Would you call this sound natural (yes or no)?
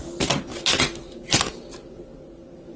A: yes